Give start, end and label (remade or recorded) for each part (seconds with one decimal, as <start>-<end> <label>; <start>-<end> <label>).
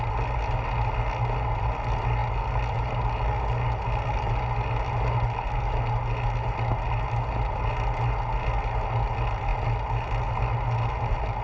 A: 0.0-11.4 recorded